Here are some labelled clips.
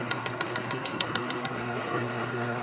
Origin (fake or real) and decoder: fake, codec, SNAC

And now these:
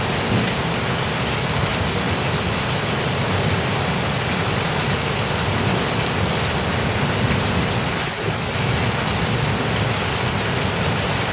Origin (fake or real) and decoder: real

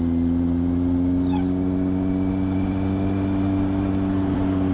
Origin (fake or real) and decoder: real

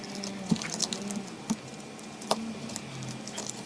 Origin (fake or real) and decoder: real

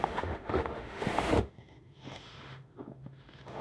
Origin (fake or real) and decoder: fake, autoencoder, DAC-VAE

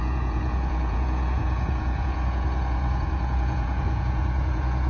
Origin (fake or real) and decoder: fake, vocoder, Vocos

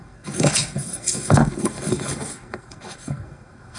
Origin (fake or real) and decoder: fake, codec, SNAC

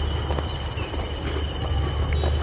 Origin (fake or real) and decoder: real